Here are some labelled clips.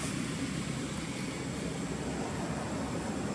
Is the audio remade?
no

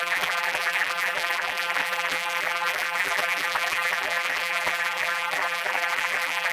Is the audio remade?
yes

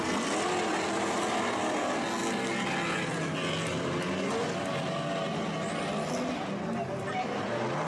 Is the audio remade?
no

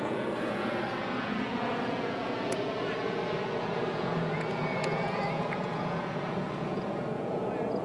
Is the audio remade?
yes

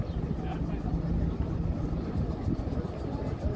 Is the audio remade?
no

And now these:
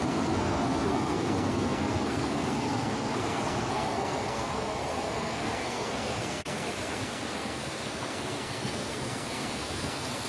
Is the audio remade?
yes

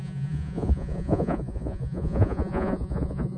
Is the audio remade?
yes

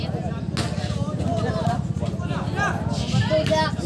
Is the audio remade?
no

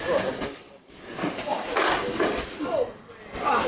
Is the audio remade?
no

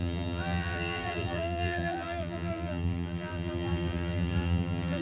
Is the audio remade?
yes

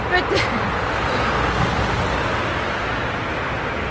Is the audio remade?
no